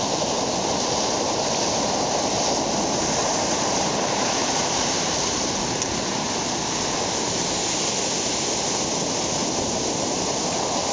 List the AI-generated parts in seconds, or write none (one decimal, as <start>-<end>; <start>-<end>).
3.2-5.1